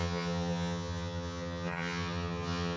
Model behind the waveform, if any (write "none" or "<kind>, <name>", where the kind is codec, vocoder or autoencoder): vocoder, HiFi-GAN